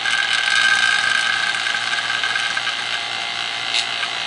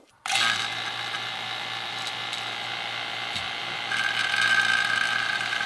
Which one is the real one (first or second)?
first